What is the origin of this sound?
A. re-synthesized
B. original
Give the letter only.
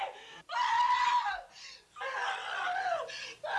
B